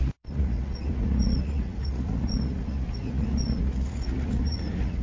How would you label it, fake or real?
fake